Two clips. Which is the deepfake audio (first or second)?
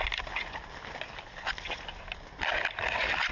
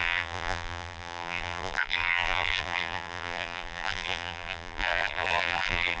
second